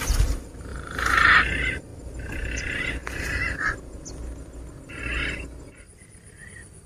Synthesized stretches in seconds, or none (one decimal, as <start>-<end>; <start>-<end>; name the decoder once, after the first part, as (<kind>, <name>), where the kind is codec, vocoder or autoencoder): 0.7-1.3 (vocoder, BigVGAN v2); 3.0-3.6